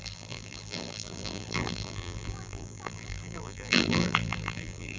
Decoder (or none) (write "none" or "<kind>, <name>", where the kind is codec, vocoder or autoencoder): vocoder, BigVGAN v2